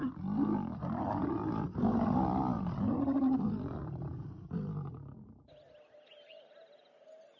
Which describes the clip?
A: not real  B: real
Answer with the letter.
B